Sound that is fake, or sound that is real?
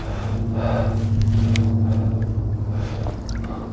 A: real